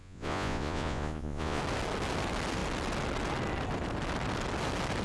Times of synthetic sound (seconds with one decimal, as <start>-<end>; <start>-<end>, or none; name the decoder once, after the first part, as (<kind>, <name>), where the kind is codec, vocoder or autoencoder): 0.0-1.6 (vocoder, Vocos)